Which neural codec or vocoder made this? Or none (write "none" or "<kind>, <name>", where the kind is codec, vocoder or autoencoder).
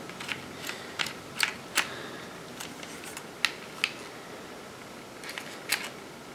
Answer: none